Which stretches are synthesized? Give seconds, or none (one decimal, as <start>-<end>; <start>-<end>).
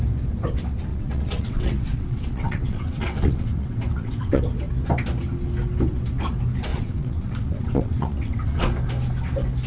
0.9-4.4; 6.7-8.7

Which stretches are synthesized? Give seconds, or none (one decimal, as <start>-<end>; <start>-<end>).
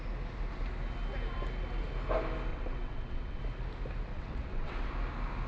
2.5-3.4; 4.1-4.9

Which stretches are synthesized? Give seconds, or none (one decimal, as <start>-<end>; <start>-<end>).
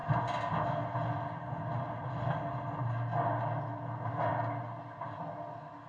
none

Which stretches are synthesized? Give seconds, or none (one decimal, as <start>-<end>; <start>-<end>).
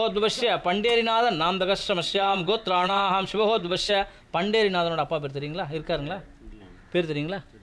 1.8-3.9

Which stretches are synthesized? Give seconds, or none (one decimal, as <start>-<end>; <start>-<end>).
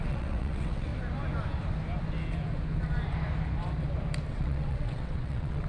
0.0-0.9; 4.3-5.7